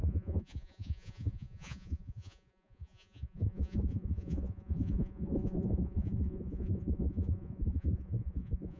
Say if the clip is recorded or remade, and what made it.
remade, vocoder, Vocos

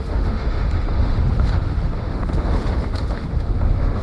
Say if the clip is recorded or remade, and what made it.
remade, autoencoder, DAC-VAE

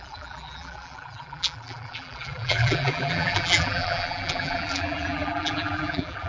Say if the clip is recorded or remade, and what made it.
remade, vocoder, BigVGAN v2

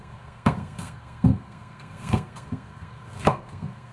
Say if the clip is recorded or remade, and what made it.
remade, codec, SNAC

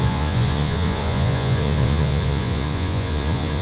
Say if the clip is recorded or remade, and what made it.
remade, vocoder, Vocos